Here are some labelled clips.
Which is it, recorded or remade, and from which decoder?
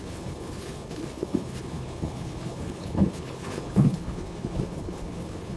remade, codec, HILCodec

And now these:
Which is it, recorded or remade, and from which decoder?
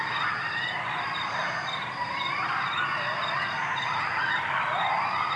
recorded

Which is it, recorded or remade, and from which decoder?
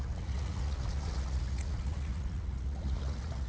remade, vocoder, Vocos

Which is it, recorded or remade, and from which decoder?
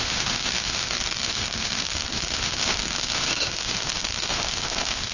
remade, autoencoder, DAC-VAE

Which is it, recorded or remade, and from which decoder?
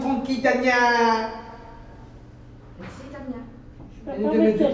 recorded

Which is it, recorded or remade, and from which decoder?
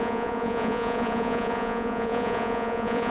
remade, vocoder, Vocos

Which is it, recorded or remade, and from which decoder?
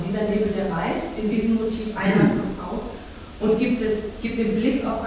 remade, vocoder, BigVGAN v2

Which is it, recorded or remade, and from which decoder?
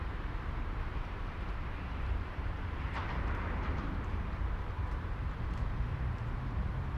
remade, vocoder, BigVGAN v2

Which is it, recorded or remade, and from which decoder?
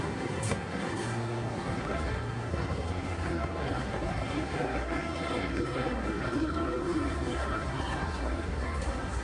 remade, codec, SNAC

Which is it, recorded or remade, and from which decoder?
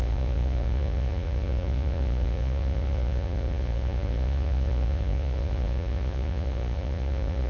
remade, vocoder, Vocos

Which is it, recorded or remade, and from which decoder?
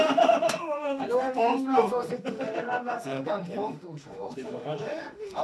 remade, autoencoder, DAC-VAE